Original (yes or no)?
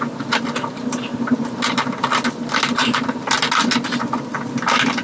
yes